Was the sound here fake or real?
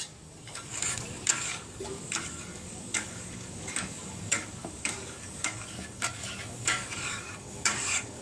fake